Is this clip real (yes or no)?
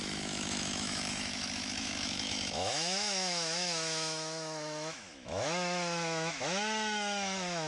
no